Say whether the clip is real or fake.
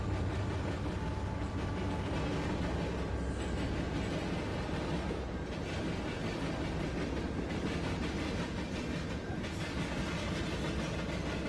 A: real